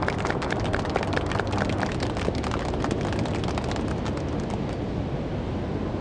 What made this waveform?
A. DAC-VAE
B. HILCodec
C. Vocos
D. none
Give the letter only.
D